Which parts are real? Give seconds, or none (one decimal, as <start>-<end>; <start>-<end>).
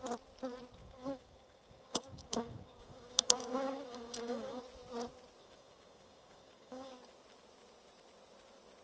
0.0-0.8; 4.6-5.4; 6.9-8.8